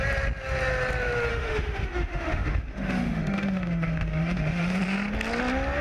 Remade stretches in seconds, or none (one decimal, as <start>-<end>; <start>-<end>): 1.3-4.8